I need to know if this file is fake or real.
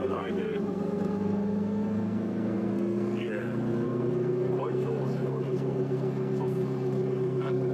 fake